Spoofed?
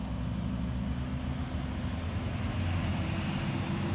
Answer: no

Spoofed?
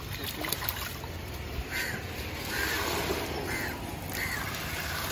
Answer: no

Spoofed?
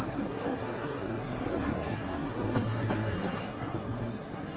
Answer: yes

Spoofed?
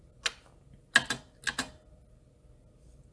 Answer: no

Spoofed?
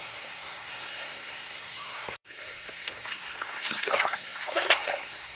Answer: yes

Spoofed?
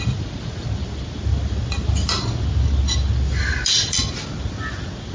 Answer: no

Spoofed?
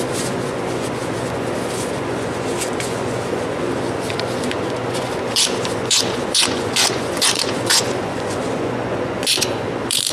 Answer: yes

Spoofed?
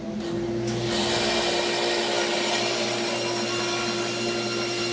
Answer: no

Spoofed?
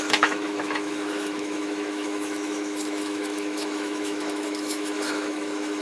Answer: yes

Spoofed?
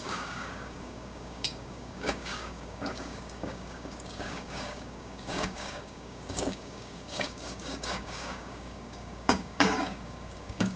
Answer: yes